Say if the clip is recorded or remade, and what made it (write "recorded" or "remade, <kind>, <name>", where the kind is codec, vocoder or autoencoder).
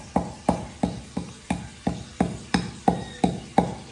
recorded